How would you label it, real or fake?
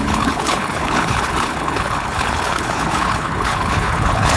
fake